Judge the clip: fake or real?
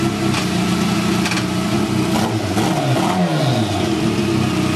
real